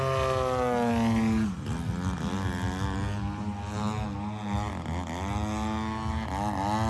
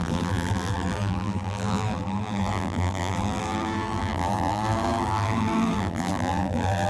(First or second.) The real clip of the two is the first